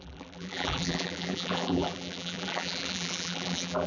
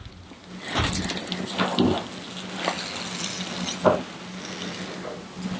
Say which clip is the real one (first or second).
second